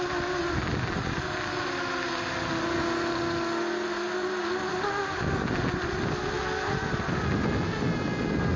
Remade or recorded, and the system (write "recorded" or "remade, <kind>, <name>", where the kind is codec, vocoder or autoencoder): recorded